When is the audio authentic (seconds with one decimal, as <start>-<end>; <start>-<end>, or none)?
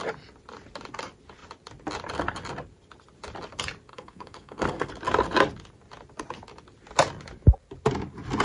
0.0-3.9; 4.9-8.4